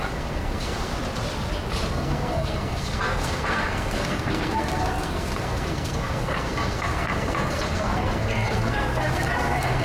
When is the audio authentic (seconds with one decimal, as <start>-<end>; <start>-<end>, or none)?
0.9-1.9